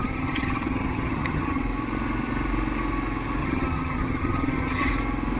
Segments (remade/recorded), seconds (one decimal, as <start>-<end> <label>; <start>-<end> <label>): 0.0-1.6 remade; 1.6-3.4 recorded; 3.4-4.9 remade; 4.9-5.4 recorded